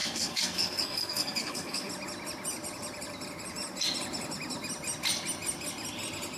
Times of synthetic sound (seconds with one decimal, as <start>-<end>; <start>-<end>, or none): 0.0-1.9